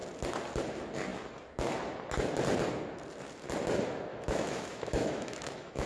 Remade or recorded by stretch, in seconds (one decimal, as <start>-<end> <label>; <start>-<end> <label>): 0.0-4.1 recorded; 4.1-5.9 remade